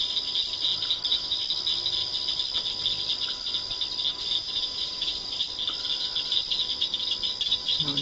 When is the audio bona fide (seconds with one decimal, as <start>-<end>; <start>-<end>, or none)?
0.0-4.4; 5.1-8.0